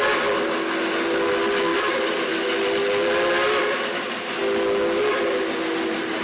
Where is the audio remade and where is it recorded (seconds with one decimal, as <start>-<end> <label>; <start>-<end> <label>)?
0.0-1.7 recorded; 1.7-2.3 remade; 2.3-6.2 recorded